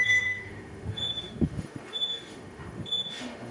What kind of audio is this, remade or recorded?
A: remade